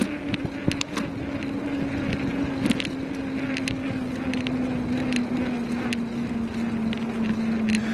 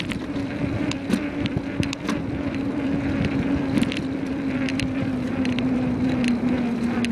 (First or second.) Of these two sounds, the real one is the first